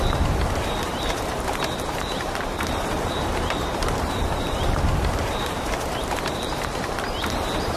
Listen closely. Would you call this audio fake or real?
fake